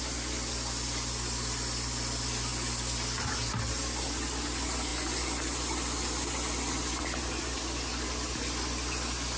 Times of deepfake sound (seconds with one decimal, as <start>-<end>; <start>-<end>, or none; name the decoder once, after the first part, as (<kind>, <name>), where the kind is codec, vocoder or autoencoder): none